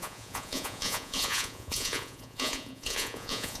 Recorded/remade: remade